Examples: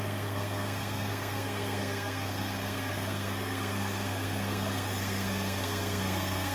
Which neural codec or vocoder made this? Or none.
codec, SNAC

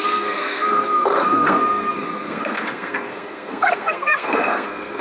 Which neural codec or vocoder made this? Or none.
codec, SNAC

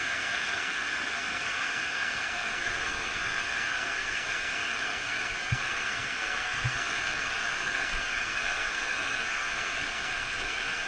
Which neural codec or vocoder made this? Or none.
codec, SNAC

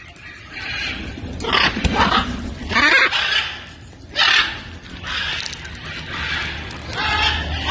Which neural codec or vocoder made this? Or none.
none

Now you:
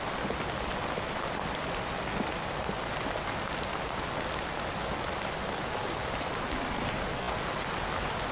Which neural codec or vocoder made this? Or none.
none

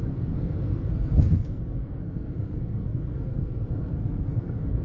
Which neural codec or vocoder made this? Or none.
codec, SNAC